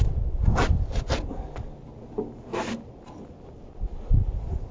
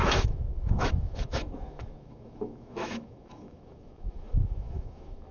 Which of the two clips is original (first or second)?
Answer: first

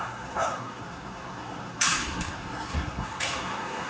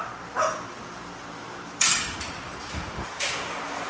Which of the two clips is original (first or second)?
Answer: second